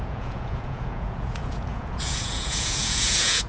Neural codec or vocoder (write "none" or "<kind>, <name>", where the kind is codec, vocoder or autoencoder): vocoder, Vocos